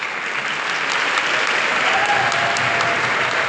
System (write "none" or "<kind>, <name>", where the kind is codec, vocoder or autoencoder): none